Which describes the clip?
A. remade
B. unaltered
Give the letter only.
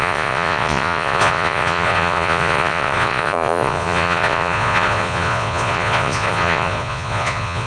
A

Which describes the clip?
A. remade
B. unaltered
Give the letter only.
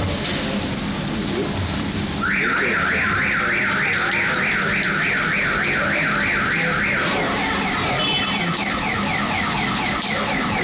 B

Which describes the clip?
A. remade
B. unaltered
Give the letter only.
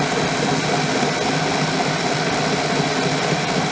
B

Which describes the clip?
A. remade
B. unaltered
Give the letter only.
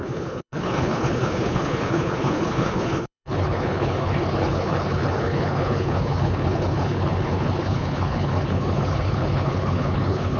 A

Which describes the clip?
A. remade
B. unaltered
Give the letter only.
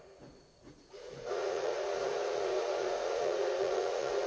A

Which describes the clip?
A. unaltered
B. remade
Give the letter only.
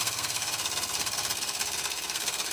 B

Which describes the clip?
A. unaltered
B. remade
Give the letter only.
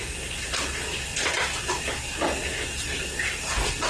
A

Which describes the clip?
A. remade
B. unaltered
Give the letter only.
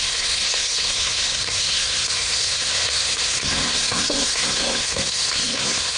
A